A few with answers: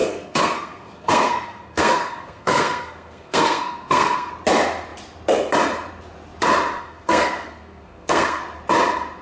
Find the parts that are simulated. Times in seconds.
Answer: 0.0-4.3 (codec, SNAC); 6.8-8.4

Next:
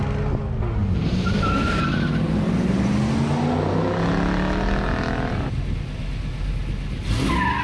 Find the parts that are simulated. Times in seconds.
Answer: 0.8-3.1 (vocoder, BigVGAN v2)